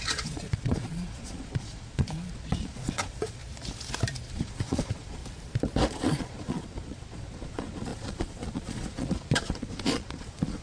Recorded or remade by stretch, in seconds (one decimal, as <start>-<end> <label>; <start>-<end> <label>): 0.0-3.4 remade; 3.4-4.3 recorded; 4.3-5.2 remade; 5.2-5.9 recorded; 5.9-10.6 remade